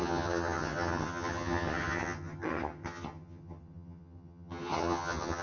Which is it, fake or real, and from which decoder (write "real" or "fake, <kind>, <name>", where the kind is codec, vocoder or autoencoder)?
fake, vocoder, HiFi-GAN